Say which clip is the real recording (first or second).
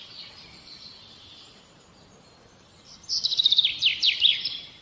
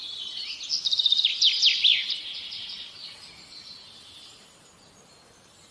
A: second